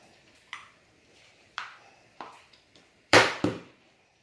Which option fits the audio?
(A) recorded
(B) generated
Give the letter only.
B